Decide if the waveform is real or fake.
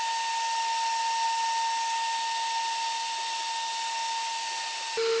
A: real